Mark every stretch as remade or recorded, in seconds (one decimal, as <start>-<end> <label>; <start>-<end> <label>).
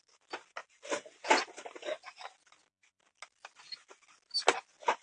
0.0-5.0 recorded